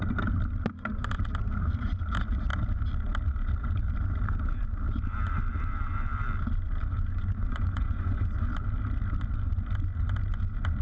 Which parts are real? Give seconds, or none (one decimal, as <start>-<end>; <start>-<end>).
0.0-7.1; 8.3-10.8